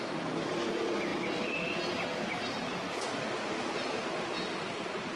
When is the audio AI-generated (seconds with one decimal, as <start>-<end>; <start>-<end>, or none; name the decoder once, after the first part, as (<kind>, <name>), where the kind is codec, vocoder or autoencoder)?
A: none